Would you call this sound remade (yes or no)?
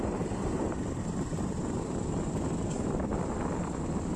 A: yes